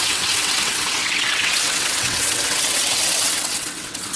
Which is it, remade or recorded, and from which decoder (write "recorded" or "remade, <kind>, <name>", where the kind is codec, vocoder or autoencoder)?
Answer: remade, vocoder, WaveNeXt